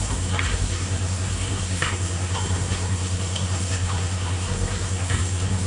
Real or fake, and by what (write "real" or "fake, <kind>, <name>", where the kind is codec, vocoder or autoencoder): fake, codec, SNAC